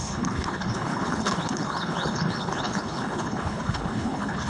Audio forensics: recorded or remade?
remade